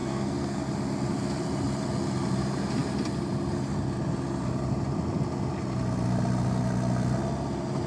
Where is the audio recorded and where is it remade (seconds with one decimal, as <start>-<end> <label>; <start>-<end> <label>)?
0.0-0.7 remade; 0.7-7.9 recorded